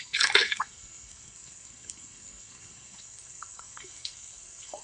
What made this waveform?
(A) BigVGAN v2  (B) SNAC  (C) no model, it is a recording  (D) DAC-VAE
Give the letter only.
B